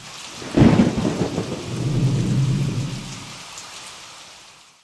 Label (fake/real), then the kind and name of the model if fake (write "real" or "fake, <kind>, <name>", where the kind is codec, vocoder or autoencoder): real